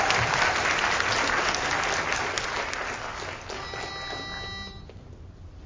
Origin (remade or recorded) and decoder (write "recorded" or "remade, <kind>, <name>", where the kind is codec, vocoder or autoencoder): recorded